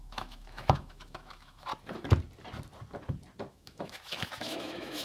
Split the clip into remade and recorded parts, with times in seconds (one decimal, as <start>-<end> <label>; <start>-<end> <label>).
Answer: 0.0-1.7 remade; 1.7-3.5 recorded; 3.5-5.0 remade